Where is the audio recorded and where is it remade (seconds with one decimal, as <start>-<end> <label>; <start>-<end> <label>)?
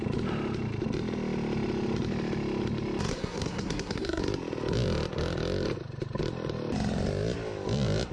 0.0-3.1 recorded; 3.1-4.2 remade; 4.2-8.1 recorded